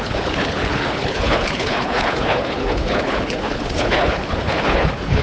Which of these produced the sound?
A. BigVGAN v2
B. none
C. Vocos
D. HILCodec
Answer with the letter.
D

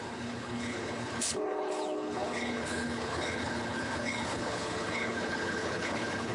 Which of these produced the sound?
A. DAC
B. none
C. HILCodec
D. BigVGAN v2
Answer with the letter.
C